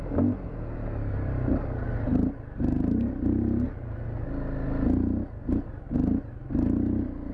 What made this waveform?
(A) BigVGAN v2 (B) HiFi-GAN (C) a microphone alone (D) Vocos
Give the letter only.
C